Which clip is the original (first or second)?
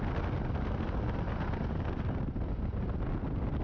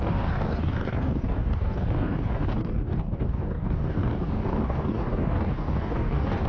first